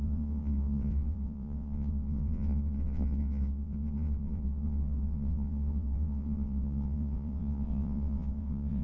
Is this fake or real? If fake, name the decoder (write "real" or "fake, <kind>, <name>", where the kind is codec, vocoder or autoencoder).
fake, vocoder, WaveNeXt